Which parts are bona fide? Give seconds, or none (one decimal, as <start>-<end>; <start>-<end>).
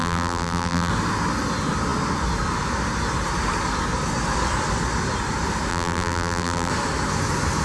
0.9-5.7; 6.7-7.6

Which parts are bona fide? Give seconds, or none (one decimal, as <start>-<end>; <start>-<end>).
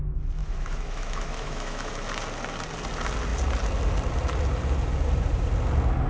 0.0-0.4; 1.9-6.1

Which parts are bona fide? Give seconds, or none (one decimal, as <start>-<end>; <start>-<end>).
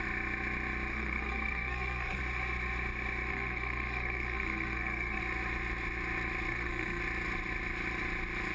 0.0-0.9; 2.2-3.3; 5.2-6.5; 7.0-8.5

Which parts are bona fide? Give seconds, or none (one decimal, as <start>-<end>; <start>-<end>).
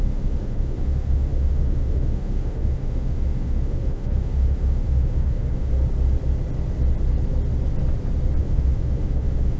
5.7-8.4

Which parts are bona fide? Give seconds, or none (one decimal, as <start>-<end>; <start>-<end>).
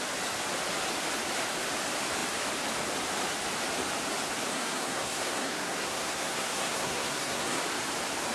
0.0-4.5; 7.6-8.3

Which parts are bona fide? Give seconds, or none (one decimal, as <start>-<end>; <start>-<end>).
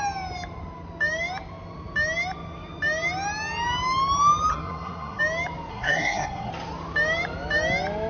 0.0-4.5; 5.2-5.7; 6.5-8.1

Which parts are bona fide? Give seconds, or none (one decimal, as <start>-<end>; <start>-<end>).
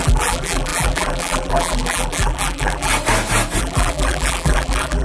2.9-3.6